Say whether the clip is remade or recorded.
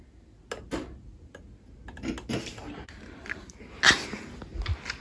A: recorded